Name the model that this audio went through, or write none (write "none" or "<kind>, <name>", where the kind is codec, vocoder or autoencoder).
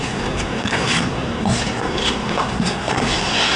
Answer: codec, SNAC